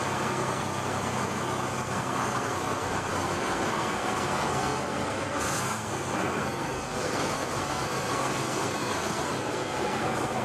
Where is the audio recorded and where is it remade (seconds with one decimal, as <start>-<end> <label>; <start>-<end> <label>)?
0.0-10.4 remade